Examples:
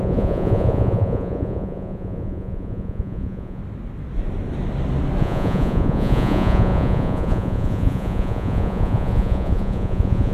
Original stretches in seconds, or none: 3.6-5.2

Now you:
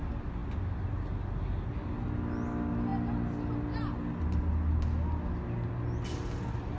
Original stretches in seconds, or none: 0.0-6.8

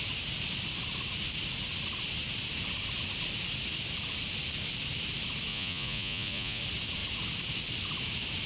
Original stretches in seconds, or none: 0.0-5.5; 6.6-8.5

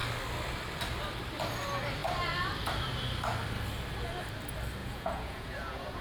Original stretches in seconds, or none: 0.0-4.8

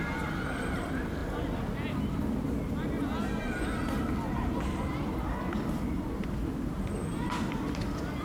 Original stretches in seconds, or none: 0.0-8.2